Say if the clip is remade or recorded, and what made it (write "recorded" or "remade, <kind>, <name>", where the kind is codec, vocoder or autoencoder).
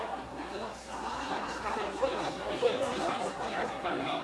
remade, codec, SNAC